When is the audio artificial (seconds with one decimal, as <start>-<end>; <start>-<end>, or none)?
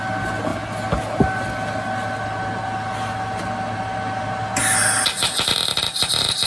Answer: none